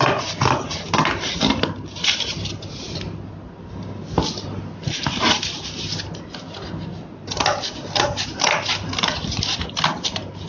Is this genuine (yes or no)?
yes